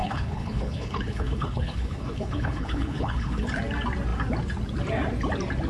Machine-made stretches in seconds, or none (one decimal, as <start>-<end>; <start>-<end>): 0.0-3.4